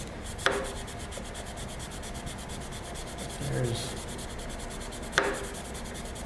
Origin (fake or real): real